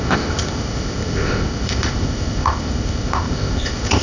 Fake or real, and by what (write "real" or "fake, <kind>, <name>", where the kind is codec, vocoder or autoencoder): fake, codec, ZipCodec